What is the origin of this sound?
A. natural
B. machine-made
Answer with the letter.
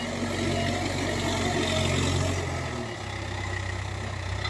A